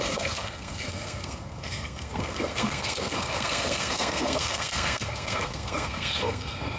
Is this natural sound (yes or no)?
no